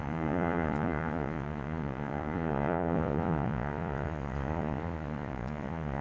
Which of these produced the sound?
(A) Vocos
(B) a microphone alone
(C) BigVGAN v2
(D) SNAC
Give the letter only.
A